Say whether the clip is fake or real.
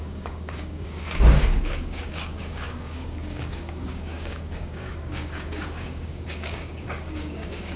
fake